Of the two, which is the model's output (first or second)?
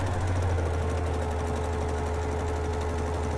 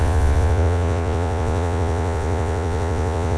second